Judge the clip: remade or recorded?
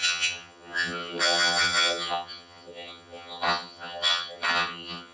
remade